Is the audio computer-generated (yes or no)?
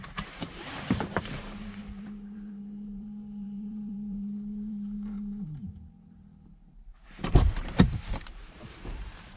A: yes